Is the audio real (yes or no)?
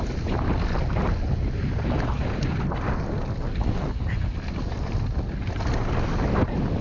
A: yes